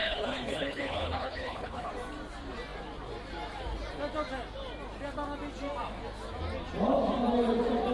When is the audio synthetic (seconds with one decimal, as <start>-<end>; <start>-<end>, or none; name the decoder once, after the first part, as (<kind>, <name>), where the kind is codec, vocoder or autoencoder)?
0.0-1.9 (codec, HILCodec)